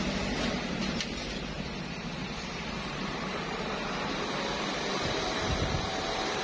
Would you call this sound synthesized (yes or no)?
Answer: yes